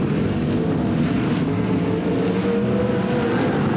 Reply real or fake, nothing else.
real